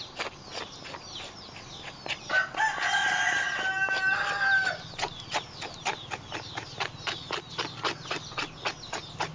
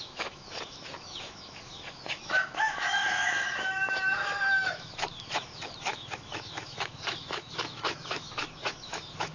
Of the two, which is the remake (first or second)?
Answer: second